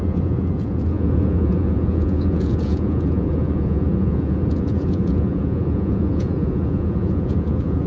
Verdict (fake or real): fake